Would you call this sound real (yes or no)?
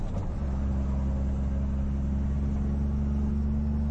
yes